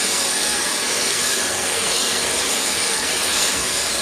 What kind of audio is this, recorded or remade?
remade